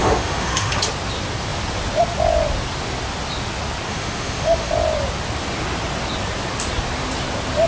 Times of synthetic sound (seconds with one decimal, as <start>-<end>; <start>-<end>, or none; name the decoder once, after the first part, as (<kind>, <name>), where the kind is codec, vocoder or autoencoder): 0.0-0.8 (autoencoder, DAC-VAE); 3.9-4.7

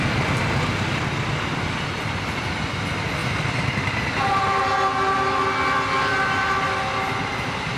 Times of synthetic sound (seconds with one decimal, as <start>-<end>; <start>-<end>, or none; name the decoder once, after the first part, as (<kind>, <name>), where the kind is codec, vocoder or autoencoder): none

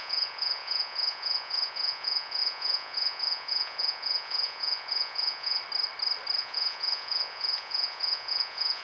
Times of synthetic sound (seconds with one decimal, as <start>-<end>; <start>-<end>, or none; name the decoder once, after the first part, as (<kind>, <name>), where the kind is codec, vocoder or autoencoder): 0.0-5.6 (vocoder, Vocos); 6.4-8.8

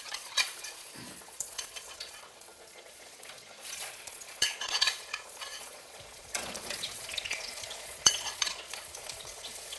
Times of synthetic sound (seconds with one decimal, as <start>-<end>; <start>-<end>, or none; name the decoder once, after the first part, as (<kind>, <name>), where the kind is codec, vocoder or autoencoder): 0.0-9.8 (vocoder, Vocos)

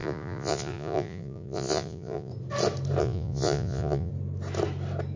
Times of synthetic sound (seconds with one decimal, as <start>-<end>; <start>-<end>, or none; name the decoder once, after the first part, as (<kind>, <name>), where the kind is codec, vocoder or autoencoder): 0.0-2.3 (vocoder, Vocos); 3.0-4.1

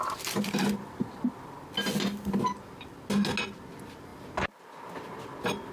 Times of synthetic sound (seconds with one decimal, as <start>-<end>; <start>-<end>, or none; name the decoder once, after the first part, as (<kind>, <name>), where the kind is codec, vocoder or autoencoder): none

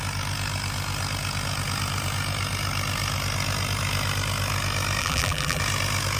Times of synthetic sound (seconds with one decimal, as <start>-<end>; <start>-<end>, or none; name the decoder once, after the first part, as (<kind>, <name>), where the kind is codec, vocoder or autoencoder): 5.0-5.6 (vocoder, BigVGAN v2)

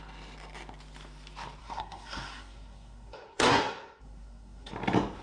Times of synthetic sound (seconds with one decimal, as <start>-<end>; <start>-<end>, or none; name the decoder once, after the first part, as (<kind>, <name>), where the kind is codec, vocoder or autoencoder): 1.6-4.7 (codec, SNAC)